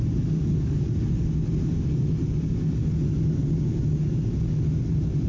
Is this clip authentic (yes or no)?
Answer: yes